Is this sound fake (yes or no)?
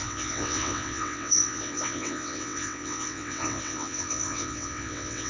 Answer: yes